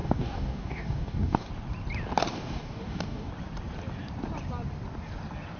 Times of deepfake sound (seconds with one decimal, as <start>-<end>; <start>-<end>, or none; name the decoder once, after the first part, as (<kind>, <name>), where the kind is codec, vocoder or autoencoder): 0.0-1.5 (codec, DAC); 2.3-3.3